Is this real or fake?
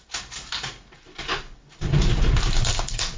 real